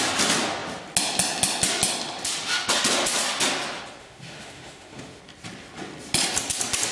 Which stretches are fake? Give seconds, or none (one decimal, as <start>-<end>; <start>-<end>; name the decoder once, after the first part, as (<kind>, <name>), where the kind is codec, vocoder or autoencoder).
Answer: 4.0-5.2 (autoencoder, DAC-VAE)

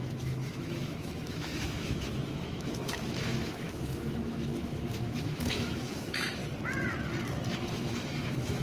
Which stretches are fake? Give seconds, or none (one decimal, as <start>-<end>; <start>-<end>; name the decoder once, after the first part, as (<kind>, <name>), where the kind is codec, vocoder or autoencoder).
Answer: 0.0-6.4 (autoencoder, DAC-VAE); 7.5-8.6

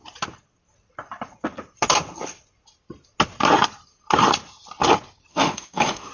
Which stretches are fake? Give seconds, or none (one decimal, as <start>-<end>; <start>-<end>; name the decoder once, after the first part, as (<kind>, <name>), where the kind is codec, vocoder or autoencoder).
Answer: 5.3-6.1 (autoencoder, DAC-VAE)

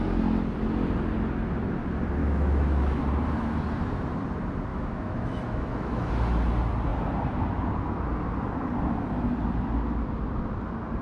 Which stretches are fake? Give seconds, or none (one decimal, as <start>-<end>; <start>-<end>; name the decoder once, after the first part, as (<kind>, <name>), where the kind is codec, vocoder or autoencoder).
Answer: 2.2-3.0 (autoencoder, DAC-VAE); 4.7-6.1